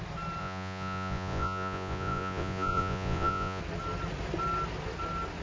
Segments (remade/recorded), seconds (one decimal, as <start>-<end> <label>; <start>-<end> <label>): 0.0-0.4 recorded; 0.4-3.6 remade; 3.6-5.4 recorded